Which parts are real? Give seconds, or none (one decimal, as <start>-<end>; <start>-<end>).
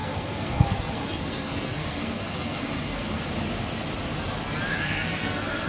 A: 3.3-4.7